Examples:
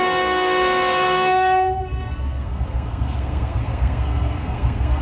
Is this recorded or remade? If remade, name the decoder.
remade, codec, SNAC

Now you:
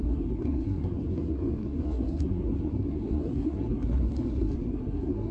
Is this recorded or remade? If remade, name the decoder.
remade, codec, SNAC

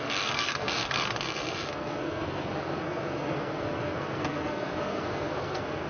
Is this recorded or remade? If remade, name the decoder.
remade, codec, SNAC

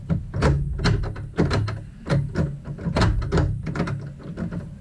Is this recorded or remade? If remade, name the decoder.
recorded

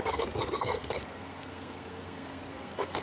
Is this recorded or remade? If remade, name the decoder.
remade, codec, SNAC